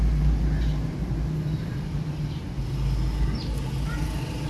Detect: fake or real real